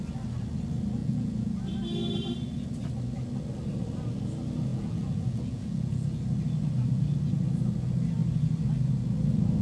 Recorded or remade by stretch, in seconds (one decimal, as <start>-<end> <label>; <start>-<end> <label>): 0.0-1.0 recorded; 1.0-1.6 remade; 1.6-4.7 recorded; 4.7-6.2 remade; 6.2-9.6 recorded